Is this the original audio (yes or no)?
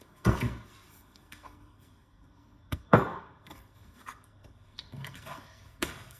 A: no